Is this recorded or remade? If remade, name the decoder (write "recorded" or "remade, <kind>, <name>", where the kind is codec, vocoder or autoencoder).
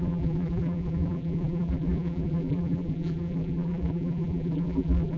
remade, vocoder, BigVGAN v2